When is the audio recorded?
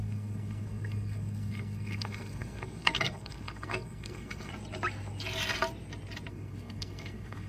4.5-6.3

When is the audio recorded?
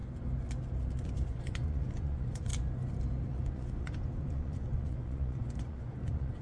0.0-1.3; 2.5-3.3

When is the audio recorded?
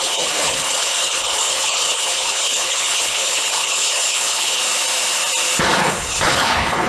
4.6-5.8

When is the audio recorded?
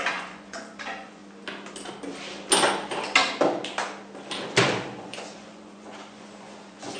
1.2-5.0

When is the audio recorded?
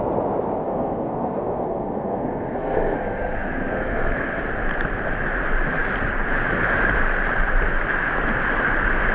0.0-0.6; 4.4-9.1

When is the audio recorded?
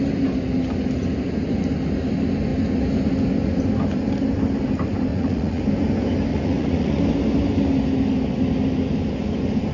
0.0-5.1; 5.6-6.3; 7.0-9.7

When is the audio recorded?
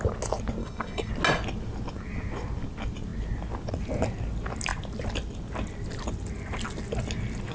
0.0-0.6; 1.1-7.5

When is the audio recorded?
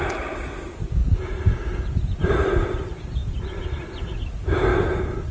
1.0-2.3; 3.2-3.9; 4.7-5.3